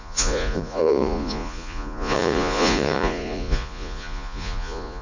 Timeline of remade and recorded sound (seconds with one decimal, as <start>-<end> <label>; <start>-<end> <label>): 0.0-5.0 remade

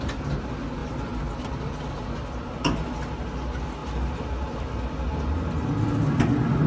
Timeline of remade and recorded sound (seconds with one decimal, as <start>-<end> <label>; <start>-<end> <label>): 0.0-6.7 recorded

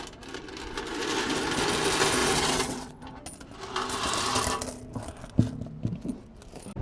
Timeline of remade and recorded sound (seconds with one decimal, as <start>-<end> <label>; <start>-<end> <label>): 0.0-2.2 recorded; 2.2-3.0 remade; 3.0-6.8 recorded

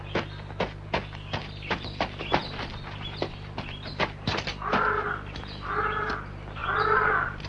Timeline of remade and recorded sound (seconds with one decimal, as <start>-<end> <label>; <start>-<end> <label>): 0.0-2.3 recorded; 2.3-3.9 remade; 3.9-6.6 recorded; 6.6-7.5 remade

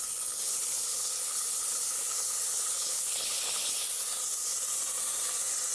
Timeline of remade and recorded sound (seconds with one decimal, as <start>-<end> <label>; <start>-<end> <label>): 0.0-0.4 recorded; 0.4-3.8 remade; 3.8-5.7 recorded

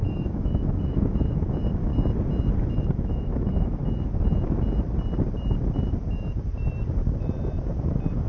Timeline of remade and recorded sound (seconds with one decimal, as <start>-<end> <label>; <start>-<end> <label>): 0.0-1.9 remade; 1.9-2.8 recorded; 2.8-3.8 remade; 3.8-8.3 recorded